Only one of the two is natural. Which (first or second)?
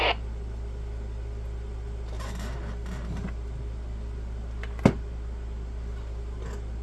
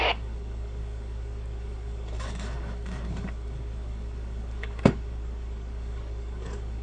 first